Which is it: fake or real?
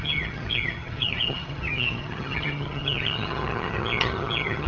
fake